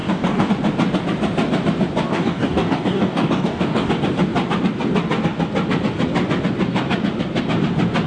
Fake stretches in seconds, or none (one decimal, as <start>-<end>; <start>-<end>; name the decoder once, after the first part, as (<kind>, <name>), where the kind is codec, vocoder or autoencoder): 0.0-0.5 (codec, DAC); 2.1-3.9